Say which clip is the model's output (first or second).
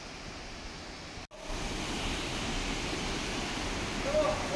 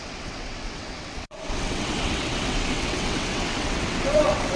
second